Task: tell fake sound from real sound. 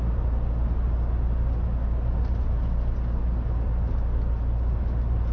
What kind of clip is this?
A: real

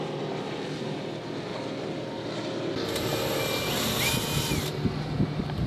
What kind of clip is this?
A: real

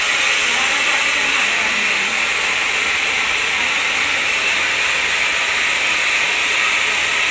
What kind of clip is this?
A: real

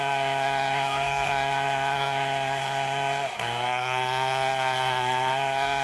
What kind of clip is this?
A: fake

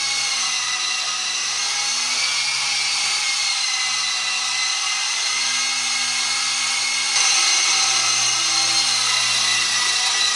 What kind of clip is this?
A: real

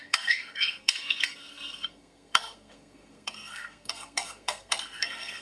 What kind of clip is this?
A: fake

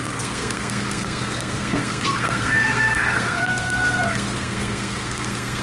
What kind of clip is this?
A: fake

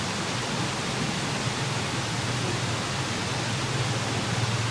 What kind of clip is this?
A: real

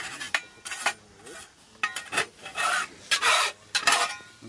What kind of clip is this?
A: real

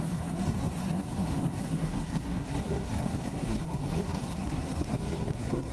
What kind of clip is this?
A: fake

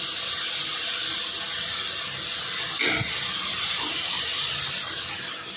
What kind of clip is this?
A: real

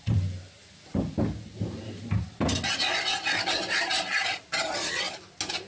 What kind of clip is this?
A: real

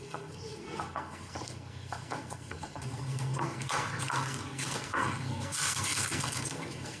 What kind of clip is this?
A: fake